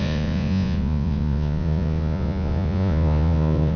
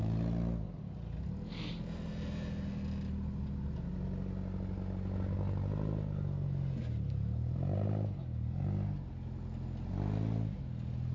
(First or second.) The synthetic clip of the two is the first